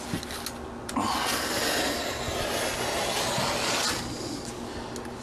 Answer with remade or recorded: recorded